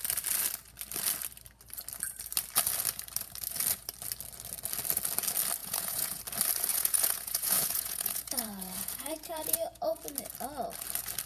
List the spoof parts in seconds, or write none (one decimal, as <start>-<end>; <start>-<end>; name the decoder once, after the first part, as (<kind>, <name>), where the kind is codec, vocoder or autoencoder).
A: 5.6-6.2 (vocoder, Vocos); 6.7-10.0